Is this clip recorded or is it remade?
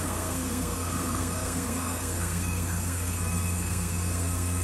remade